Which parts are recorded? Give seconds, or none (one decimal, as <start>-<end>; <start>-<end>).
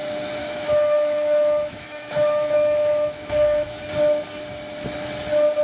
0.0-0.4; 3.8-5.6